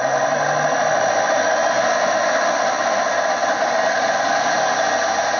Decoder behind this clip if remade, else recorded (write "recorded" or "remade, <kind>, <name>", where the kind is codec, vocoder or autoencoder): recorded